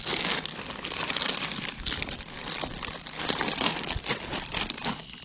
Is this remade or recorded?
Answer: recorded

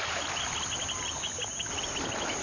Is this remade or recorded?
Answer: recorded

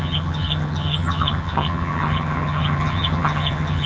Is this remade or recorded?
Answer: remade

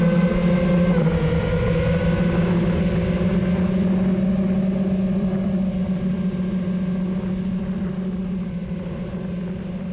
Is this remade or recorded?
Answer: recorded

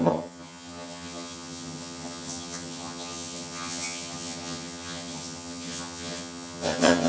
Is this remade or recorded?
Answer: remade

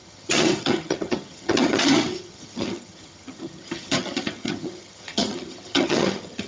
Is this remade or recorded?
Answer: remade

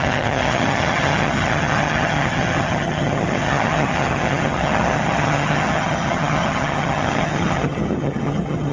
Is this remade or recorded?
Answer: remade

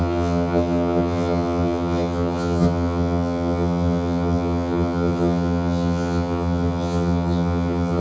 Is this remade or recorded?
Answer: remade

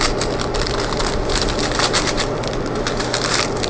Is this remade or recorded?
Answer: recorded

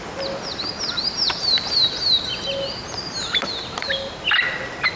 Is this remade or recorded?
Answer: recorded